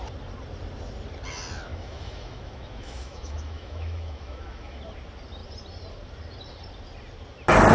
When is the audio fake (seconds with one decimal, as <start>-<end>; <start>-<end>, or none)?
1.7-4.8